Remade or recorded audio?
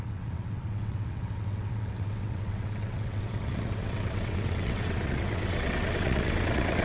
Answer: remade